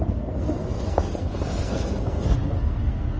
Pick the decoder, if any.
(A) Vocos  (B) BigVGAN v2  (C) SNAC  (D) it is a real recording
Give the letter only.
C